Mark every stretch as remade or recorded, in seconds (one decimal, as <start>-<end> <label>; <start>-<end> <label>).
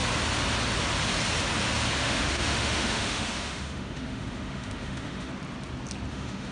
0.0-2.0 recorded; 2.0-5.3 remade; 5.3-6.1 recorded; 6.1-6.5 remade